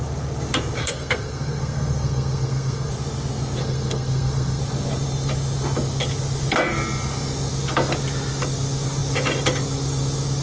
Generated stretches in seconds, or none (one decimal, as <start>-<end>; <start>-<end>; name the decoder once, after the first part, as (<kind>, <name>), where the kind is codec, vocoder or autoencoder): 0.8-2.9 (codec, SNAC); 3.6-4.6